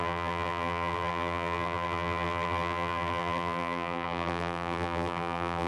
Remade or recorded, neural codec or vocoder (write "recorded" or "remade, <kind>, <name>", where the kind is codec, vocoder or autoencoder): remade, vocoder, BigVGAN v2